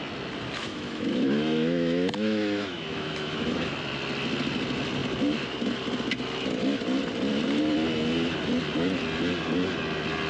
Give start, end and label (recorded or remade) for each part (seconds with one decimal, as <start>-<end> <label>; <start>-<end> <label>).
0.0-0.6 recorded; 0.6-3.7 remade; 3.7-10.3 recorded